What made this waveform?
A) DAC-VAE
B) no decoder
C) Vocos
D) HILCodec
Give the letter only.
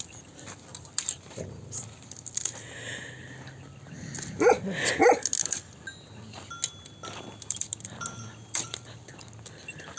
B